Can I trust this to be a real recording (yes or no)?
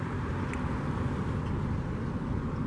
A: yes